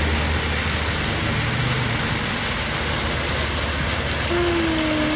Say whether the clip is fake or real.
real